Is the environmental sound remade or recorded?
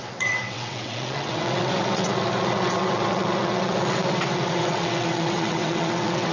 remade